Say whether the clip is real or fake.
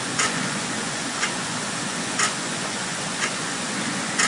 fake